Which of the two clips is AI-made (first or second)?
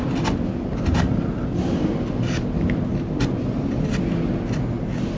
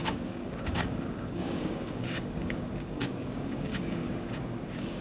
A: second